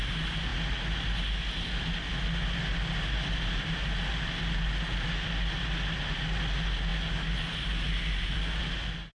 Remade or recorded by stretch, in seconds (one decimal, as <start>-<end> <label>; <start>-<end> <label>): 0.0-9.2 recorded